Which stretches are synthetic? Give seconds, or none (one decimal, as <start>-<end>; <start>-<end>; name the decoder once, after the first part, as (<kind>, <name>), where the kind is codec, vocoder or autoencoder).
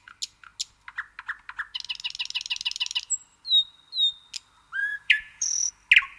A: 4.8-5.7 (vocoder, Vocos)